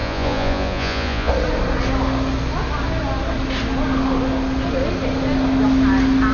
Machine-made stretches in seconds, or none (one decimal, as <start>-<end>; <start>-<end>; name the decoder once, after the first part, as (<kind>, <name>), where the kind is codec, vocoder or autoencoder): 0.0-1.3 (vocoder, Vocos)